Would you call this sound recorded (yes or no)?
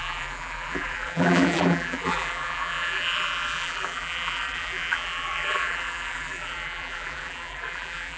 no